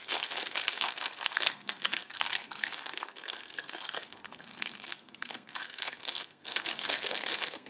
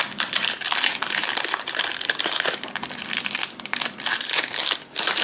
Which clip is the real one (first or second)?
second